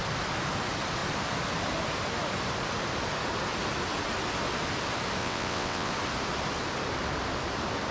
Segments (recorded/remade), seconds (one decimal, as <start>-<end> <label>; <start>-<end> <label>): 0.0-5.2 recorded; 5.2-5.9 remade; 5.9-7.9 recorded